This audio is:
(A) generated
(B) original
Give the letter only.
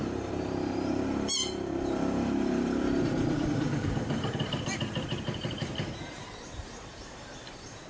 A